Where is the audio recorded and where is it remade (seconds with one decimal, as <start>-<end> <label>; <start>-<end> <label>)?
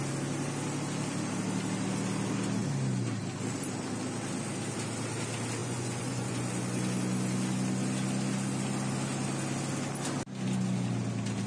0.0-5.6 recorded; 5.6-6.4 remade; 6.4-11.5 recorded